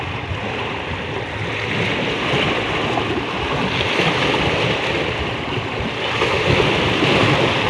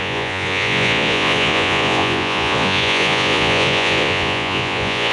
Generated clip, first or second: second